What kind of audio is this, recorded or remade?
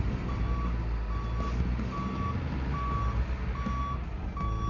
recorded